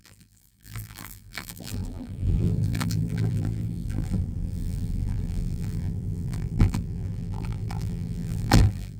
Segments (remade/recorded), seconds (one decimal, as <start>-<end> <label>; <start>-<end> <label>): 0.0-9.0 remade

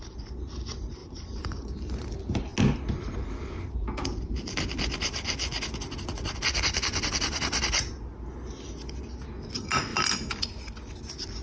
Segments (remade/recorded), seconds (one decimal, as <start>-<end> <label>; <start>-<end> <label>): 0.0-1.0 recorded; 1.0-2.1 remade; 2.1-11.4 recorded

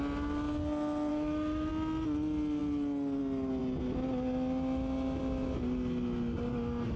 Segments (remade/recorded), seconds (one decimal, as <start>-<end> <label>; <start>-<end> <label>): 0.0-1.1 recorded; 1.1-1.7 remade; 1.7-7.0 recorded

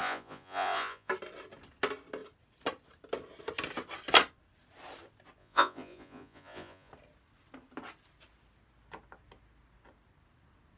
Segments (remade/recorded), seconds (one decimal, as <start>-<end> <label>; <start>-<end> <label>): 0.0-1.1 remade; 1.1-5.4 recorded; 5.4-6.9 remade; 6.9-10.8 recorded

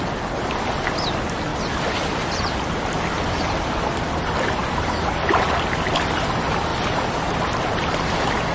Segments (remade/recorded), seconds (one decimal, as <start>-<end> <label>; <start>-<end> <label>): 0.0-8.5 recorded

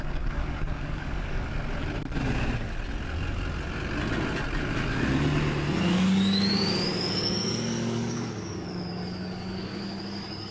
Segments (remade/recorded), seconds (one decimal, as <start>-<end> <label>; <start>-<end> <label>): 0.0-1.5 remade; 1.5-5.8 recorded; 5.8-10.5 remade

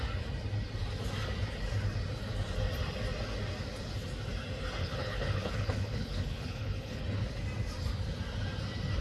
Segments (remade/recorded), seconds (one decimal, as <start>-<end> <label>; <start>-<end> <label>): 0.0-4.8 recorded; 4.8-7.0 remade; 7.0-9.0 recorded